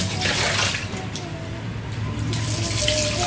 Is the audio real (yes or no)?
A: yes